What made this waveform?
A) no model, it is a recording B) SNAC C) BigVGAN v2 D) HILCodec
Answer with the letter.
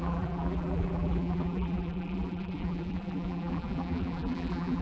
C